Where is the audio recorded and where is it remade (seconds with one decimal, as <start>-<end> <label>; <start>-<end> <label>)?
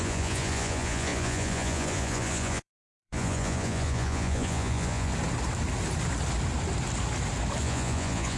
0.0-5.1 remade; 5.1-7.6 recorded; 7.6-8.4 remade